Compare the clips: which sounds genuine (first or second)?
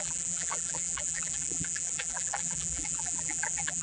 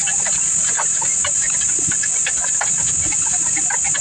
second